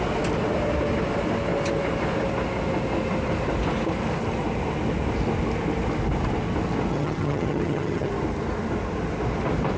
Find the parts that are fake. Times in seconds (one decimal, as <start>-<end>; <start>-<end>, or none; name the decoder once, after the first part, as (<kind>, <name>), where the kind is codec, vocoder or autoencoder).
6.9-8.1 (vocoder, HiFi-GAN)